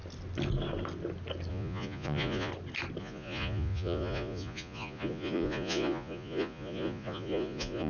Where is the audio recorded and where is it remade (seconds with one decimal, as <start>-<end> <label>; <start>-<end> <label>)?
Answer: 0.0-1.5 recorded; 1.5-2.5 remade; 2.5-3.0 recorded; 3.0-7.9 remade